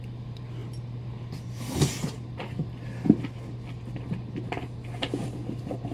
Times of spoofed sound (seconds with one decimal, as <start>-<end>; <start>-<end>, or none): none